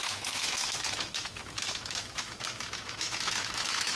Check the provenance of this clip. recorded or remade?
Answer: remade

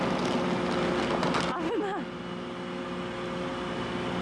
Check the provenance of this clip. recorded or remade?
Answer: recorded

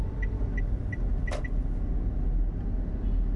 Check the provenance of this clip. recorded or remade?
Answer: recorded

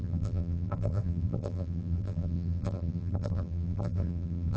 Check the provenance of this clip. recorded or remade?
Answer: remade